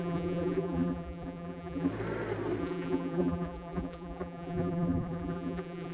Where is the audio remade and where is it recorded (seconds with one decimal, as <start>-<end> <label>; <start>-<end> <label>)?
0.0-1.9 remade; 1.9-2.6 recorded; 2.6-5.9 remade